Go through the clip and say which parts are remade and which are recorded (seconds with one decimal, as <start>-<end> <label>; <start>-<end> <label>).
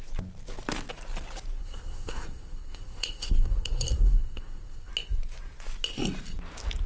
0.0-1.6 recorded; 1.6-4.9 remade; 4.9-6.9 recorded